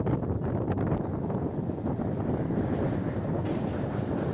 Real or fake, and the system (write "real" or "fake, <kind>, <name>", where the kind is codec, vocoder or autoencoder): real